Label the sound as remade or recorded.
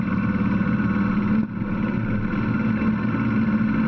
recorded